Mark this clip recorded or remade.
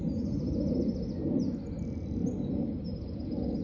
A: recorded